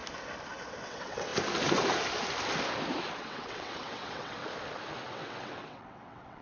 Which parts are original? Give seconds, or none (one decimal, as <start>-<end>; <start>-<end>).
0.0-0.8; 1.3-3.2; 4.4-5.0